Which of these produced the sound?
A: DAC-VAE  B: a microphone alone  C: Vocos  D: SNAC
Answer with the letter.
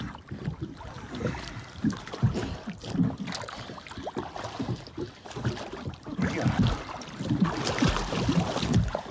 B